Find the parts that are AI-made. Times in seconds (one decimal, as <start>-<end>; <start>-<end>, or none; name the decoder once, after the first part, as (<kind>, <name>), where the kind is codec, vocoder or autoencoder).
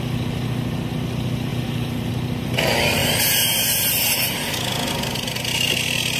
1.5-2.1 (vocoder, BigVGAN v2); 3.0-4.5